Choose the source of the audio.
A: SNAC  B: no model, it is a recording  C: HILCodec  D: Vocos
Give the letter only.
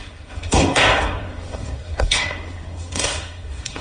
A